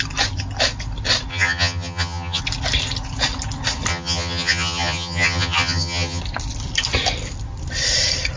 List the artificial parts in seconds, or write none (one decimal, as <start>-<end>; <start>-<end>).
1.3-2.4; 3.9-6.2